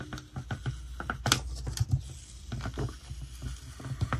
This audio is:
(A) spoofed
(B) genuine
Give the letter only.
B